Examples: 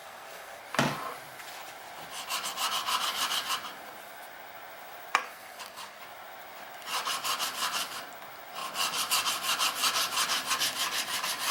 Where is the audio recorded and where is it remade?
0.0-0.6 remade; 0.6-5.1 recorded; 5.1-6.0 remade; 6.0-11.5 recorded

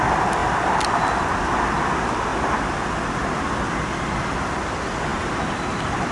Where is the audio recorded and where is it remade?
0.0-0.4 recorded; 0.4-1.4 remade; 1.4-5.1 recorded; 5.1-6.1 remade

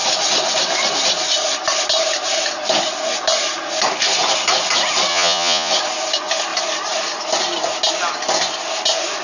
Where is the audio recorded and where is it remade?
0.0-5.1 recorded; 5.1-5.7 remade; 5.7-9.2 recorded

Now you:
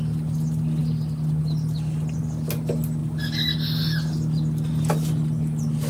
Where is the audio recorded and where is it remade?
0.0-5.9 recorded

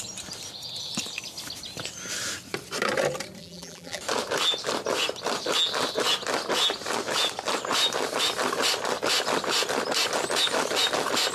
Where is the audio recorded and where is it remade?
0.0-3.4 recorded; 3.4-4.0 remade; 4.0-11.3 recorded

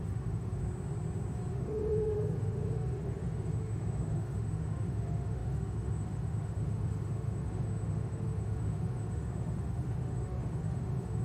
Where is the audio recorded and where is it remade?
0.0-0.6 remade; 0.6-1.5 recorded; 1.5-11.2 remade

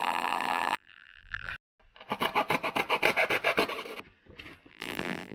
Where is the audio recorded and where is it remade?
0.0-1.5 remade; 1.5-4.7 recorded; 4.7-5.3 remade